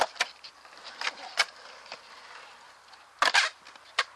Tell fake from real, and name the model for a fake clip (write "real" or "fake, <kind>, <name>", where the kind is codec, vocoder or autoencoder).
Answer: real